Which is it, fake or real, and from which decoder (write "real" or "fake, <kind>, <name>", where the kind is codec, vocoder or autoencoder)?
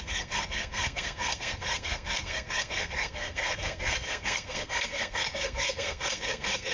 fake, codec, SNAC